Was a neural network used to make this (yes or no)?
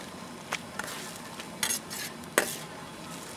no